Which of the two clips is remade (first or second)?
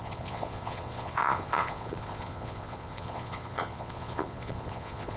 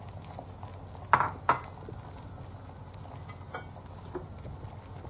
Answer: first